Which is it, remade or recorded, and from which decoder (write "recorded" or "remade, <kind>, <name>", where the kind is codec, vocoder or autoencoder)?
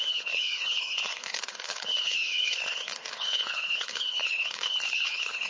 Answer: remade, codec, HILCodec